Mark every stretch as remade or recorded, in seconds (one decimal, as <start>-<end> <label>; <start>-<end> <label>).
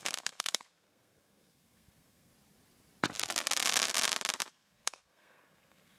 0.0-2.3 remade; 2.3-4.5 recorded; 4.5-6.0 remade